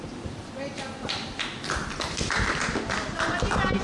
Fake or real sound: real